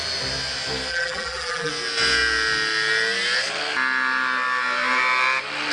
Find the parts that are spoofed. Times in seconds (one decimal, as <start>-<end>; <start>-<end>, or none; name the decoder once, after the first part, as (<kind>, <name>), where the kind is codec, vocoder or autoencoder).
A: 0.9-1.7 (vocoder, BigVGAN v2)